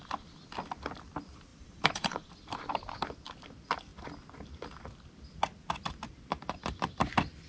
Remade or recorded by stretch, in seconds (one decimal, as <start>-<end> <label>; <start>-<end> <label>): 0.0-1.5 recorded; 1.5-2.3 remade; 2.3-7.5 recorded